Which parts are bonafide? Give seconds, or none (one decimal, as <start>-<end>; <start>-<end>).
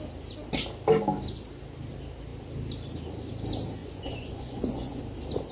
0.0-3.8; 5.0-5.5